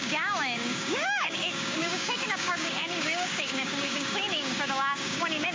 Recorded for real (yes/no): no